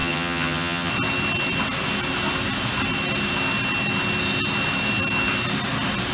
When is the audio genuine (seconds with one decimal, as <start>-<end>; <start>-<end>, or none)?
0.9-6.1